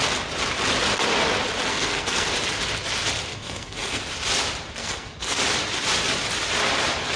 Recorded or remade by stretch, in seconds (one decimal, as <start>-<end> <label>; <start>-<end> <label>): 0.0-1.7 recorded; 1.7-2.3 remade; 2.3-3.3 recorded; 3.3-4.0 remade; 4.0-4.8 recorded; 4.8-5.4 remade; 5.4-7.2 recorded